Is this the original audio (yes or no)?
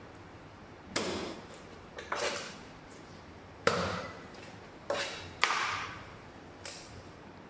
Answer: no